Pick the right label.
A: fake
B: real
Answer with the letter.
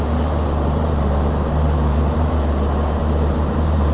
A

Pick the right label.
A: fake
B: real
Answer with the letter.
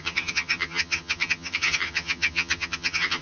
A